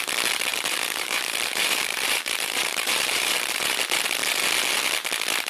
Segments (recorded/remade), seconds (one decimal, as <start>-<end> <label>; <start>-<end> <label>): 0.0-0.5 recorded; 0.5-3.8 remade; 3.8-5.5 recorded